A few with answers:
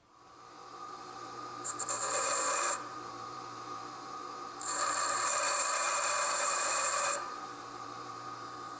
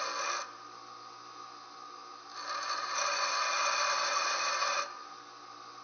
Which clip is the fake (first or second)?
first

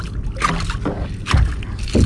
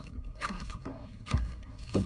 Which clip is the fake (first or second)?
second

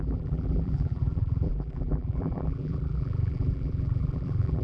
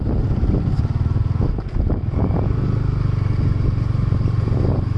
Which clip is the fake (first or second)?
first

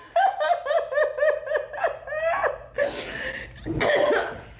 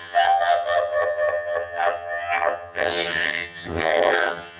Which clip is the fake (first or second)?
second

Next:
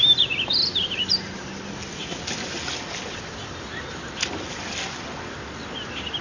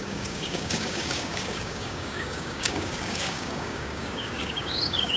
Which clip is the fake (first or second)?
second